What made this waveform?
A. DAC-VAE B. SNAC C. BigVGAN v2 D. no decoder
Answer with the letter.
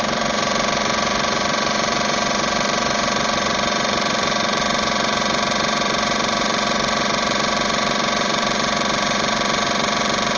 C